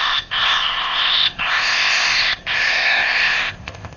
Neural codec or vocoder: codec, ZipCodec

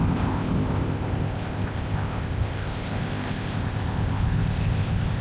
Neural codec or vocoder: codec, ZipCodec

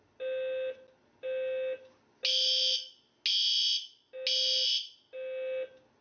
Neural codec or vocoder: none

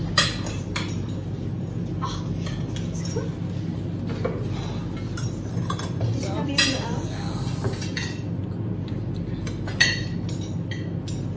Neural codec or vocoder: none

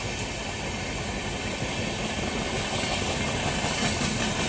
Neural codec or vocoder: none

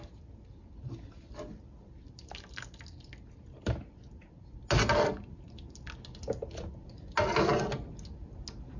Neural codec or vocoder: none